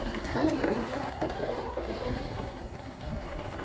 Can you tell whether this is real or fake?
fake